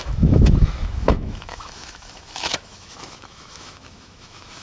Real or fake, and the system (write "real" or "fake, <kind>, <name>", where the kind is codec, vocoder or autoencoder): fake, autoencoder, DAC-VAE